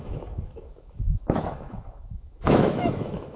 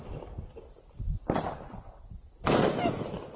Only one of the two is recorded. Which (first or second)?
second